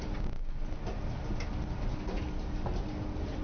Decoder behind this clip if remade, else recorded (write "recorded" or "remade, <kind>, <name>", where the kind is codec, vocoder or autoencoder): recorded